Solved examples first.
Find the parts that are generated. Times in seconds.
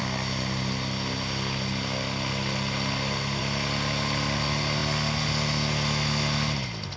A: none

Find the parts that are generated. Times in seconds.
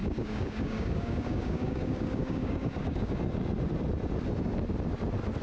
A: 0.0-3.2 (codec, DAC)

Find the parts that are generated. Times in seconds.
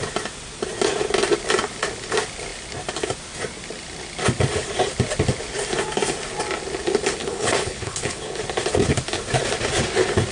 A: 7.2-8.4 (codec, HILCodec)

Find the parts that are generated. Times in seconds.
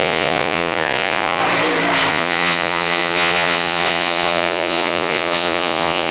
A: 0.0-1.4 (vocoder, Vocos); 2.1-6.1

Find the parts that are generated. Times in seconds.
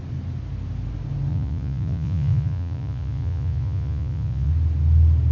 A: 1.3-4.5 (vocoder, Vocos)